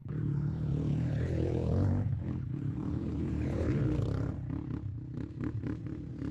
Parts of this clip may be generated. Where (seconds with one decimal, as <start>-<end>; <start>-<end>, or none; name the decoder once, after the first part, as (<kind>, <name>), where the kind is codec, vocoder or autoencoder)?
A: 0.0-3.8 (codec, HILCodec)